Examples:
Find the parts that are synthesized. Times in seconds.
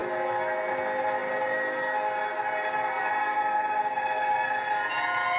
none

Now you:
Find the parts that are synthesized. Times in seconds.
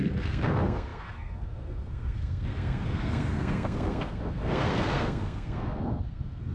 0.0-6.5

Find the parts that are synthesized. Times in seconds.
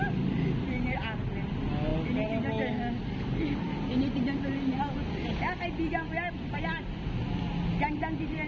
none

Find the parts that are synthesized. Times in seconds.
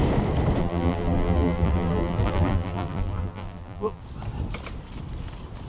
0.6-4.0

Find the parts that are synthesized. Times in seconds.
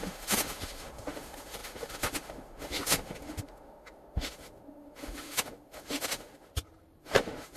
0.0-6.5; 7.0-7.6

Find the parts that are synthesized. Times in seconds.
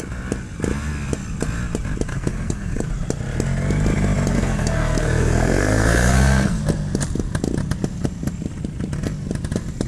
2.1-2.9; 4.3-6.6